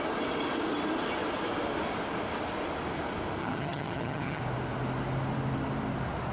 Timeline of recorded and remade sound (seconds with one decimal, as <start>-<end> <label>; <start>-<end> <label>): 0.0-3.4 recorded; 3.4-4.4 remade; 4.4-6.3 recorded